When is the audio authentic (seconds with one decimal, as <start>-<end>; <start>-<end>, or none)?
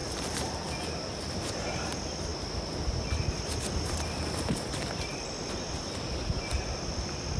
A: 0.0-7.4